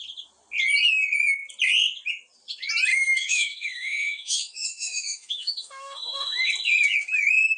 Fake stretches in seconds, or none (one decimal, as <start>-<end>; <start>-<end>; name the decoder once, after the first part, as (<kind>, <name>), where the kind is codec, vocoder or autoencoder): 2.9-6.5 (autoencoder, DAC-VAE)